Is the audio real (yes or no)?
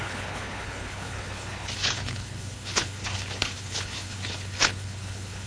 no